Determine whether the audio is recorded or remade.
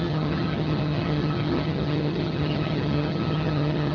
remade